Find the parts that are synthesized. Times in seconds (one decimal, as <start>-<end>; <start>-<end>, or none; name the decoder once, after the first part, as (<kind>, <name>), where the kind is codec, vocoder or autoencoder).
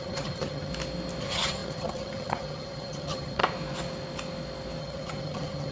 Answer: 0.0-0.7 (vocoder, HiFi-GAN); 1.2-3.4; 4.8-5.7